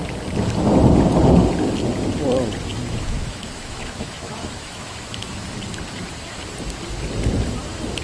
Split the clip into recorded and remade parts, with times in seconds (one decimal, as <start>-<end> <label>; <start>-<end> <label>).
0.0-2.7 recorded; 2.7-5.5 remade; 5.5-8.0 recorded